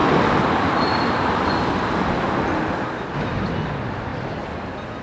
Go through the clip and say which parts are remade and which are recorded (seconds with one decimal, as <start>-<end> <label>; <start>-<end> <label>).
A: 0.0-5.0 recorded